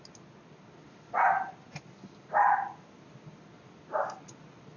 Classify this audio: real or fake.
real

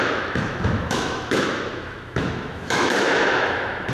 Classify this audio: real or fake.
fake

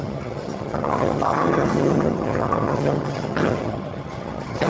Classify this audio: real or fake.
fake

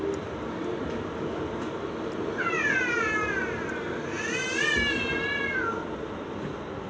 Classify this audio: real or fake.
real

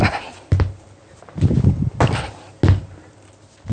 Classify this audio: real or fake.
real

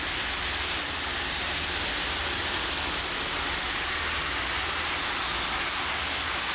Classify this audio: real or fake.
real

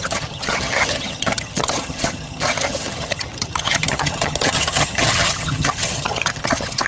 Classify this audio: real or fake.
fake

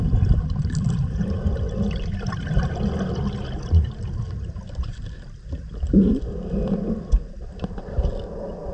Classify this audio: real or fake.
real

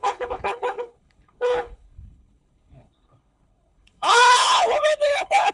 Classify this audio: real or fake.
fake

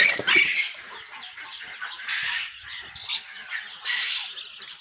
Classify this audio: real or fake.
real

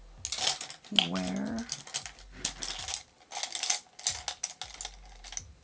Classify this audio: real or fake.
real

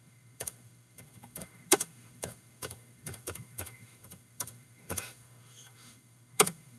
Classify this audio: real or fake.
fake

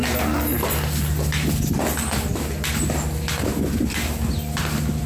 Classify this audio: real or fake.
real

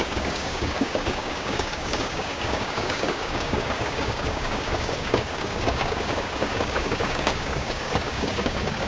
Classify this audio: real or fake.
fake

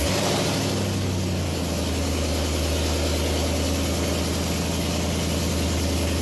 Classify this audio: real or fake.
real